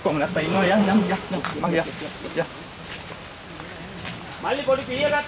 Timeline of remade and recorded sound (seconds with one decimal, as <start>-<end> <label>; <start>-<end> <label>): 0.0-1.0 remade; 1.0-1.5 recorded; 1.5-2.3 remade; 2.3-5.3 recorded